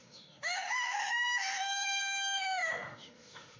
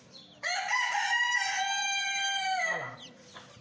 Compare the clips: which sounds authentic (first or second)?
second